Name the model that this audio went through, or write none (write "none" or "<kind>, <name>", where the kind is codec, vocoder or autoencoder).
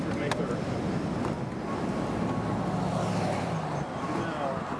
none